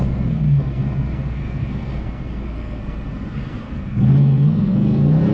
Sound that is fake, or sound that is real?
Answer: fake